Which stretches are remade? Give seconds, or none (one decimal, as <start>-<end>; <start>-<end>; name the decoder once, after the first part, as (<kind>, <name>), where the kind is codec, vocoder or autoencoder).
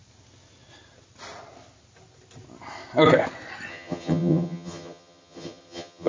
3.7-6.1 (vocoder, HiFi-GAN)